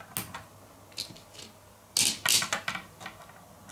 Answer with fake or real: real